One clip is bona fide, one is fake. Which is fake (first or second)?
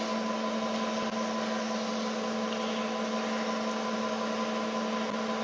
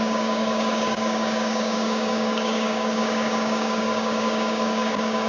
second